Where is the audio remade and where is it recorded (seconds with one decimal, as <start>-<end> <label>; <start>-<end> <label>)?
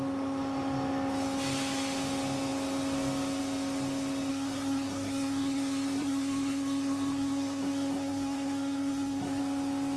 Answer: 0.0-4.3 recorded; 4.3-9.4 remade; 9.4-10.0 recorded